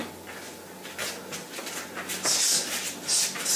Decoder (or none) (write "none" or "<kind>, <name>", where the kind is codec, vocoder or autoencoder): none